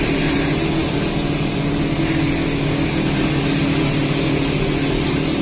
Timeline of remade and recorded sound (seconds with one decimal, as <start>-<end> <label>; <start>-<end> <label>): 0.0-5.4 recorded